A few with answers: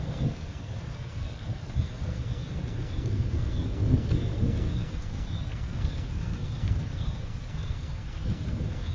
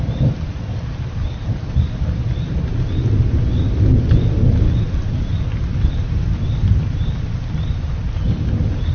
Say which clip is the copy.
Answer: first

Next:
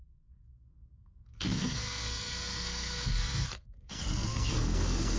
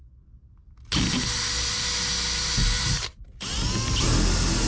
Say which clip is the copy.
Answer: first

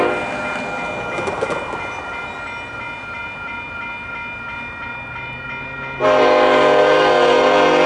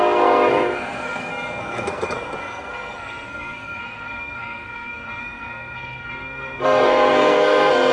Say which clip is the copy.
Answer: second